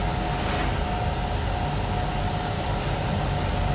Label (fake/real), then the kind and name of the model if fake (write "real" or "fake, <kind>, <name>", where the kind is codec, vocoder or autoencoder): real